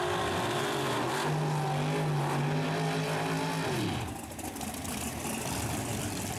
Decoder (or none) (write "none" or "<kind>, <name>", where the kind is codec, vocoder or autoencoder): none